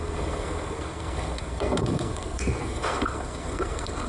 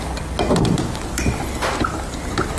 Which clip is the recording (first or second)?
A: second